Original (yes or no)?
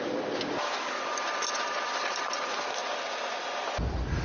yes